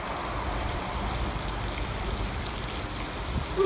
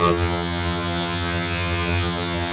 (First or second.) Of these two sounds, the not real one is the second